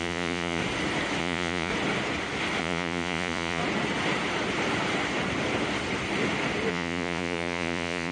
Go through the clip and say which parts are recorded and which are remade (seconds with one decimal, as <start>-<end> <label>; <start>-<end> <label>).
0.0-0.6 remade; 0.6-1.2 recorded; 1.2-1.7 remade; 1.7-2.6 recorded; 2.6-3.6 remade; 3.6-6.7 recorded; 6.7-8.1 remade